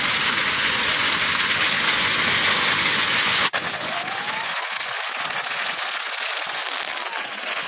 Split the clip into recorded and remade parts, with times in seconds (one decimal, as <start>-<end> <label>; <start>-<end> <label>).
0.0-6.6 remade; 6.6-7.2 recorded; 7.2-7.7 remade